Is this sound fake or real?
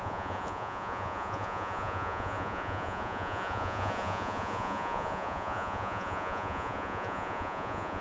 fake